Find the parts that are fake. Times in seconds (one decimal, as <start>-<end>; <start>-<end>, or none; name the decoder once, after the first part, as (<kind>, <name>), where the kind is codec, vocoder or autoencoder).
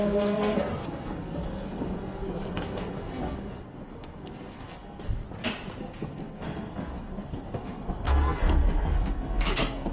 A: 0.0-5.2 (codec, SNAC); 5.8-9.9